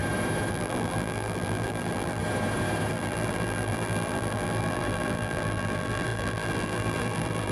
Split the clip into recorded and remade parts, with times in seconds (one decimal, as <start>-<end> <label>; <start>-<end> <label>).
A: 0.0-0.5 recorded; 0.5-2.2 remade; 2.2-2.9 recorded; 2.9-7.5 remade